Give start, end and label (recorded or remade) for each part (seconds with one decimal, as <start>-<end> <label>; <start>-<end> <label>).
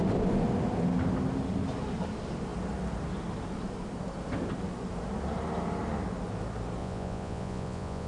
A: 0.0-6.8 recorded; 6.8-8.1 remade